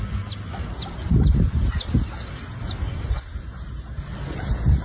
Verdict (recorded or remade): recorded